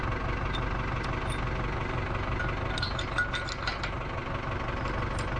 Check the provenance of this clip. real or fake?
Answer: real